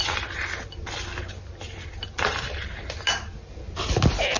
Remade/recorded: recorded